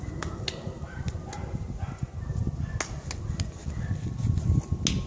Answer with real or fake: real